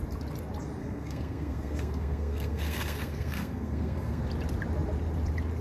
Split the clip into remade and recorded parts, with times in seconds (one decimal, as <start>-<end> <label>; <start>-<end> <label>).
0.0-0.8 recorded; 0.8-4.2 remade; 4.2-5.6 recorded